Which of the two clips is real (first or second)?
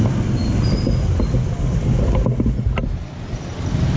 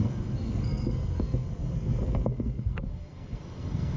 first